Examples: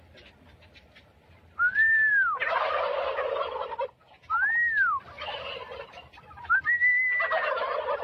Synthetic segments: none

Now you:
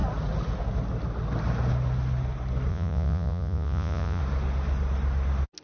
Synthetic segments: 2.7-4.2

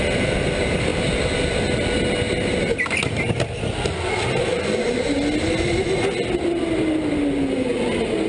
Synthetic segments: none

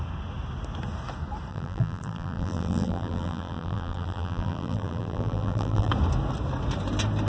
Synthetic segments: 1.5-5.9

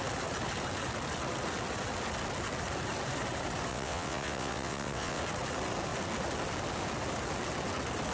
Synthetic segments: 3.7-5.2

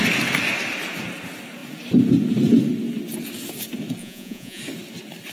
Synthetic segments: 4.0-4.6

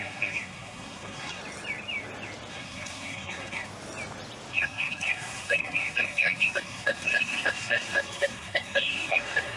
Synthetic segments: 0.0-1.4; 2.5-3.7; 4.5-9.6